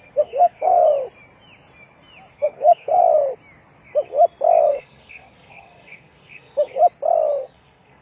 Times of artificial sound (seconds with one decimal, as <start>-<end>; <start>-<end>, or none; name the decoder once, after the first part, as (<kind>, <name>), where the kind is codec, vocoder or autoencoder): 0.0-0.9 (codec, SNAC); 2.3-3.0; 4.7-6.8; 7.4-8.0